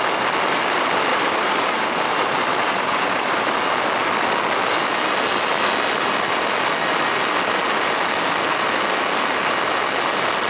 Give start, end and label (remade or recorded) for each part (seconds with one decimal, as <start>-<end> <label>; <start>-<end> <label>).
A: 0.0-1.1 recorded; 1.1-3.6 remade; 3.6-10.5 recorded